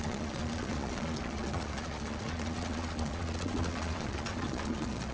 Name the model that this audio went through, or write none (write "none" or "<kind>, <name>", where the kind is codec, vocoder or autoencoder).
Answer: vocoder, Vocos